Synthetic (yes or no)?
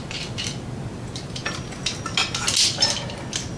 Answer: no